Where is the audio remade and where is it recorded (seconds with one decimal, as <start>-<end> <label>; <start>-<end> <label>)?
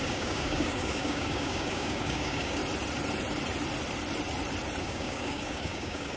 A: 0.0-2.6 remade; 2.6-4.8 recorded; 4.8-6.2 remade